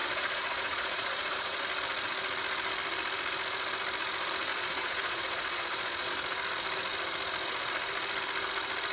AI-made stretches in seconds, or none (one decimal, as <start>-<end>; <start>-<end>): 0.0-1.6; 4.5-6.1

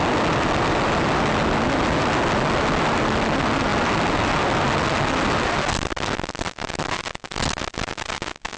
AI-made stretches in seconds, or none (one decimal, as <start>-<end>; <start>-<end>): none

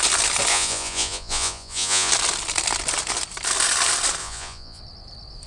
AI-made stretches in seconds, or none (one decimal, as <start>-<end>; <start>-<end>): 0.5-2.1; 4.2-4.8

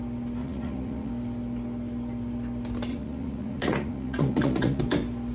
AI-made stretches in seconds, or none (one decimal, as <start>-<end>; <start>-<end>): 0.4-1.1; 2.9-4.8

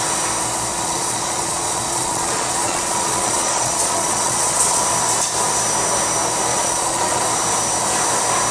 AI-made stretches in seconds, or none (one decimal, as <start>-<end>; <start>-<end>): 0.7-4.8; 6.5-7.2

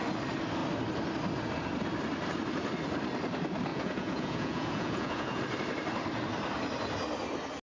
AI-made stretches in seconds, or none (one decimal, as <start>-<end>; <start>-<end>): 3.7-5.4

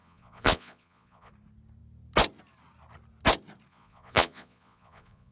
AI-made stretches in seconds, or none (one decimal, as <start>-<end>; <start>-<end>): 0.0-1.3; 3.7-5.3

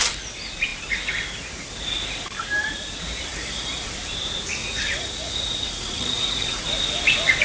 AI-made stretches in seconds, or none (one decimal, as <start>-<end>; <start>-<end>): 3.3-3.9; 4.6-6.6